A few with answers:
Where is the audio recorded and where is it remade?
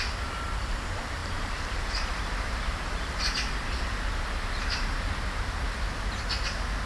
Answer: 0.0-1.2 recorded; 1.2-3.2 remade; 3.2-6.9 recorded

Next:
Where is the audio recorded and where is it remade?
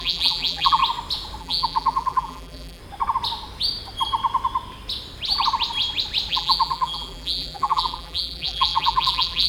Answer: 0.0-0.8 remade; 0.8-1.4 recorded; 1.4-2.8 remade; 2.8-6.3 recorded; 6.3-9.5 remade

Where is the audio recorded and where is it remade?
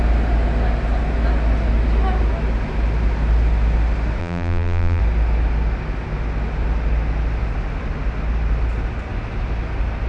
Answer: 0.0-4.2 recorded; 4.2-5.0 remade; 5.0-10.1 recorded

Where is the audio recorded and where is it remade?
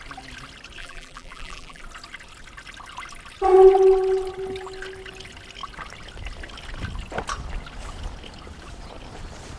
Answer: 0.0-0.8 recorded; 0.8-1.8 remade; 1.8-9.6 recorded